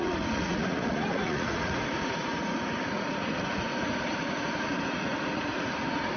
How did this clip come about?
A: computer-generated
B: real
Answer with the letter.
A